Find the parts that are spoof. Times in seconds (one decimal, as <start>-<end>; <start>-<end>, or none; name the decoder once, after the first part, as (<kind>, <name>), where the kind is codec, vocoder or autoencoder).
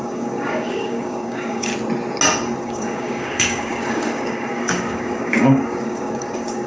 0.0-1.7 (codec, DAC); 2.6-6.7